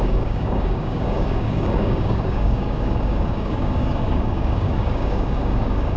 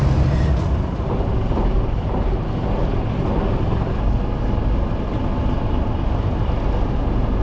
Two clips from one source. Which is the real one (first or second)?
second